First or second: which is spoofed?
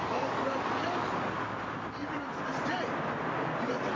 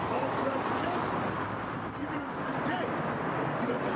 second